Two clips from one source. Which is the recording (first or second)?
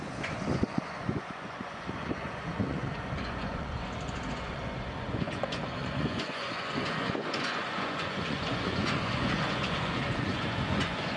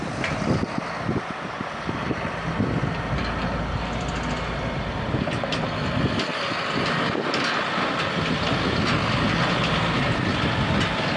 second